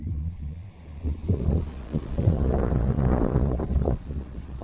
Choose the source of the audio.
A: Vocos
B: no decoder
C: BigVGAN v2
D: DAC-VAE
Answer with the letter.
A